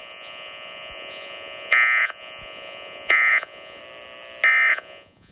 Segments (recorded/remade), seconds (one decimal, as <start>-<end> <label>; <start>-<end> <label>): 0.0-3.8 remade; 3.8-4.7 recorded; 4.7-5.3 remade